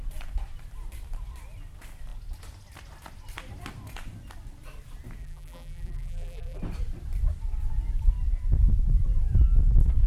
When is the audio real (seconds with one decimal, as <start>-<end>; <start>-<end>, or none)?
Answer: 0.0-5.2; 6.6-10.1